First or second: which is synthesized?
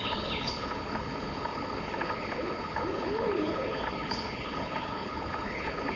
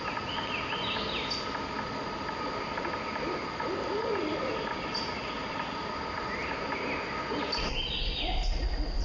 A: first